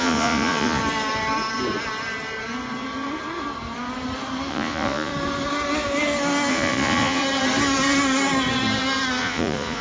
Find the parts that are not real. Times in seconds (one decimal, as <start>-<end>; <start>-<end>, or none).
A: 0.0-0.8; 4.5-5.1; 6.5-7.2; 9.2-9.8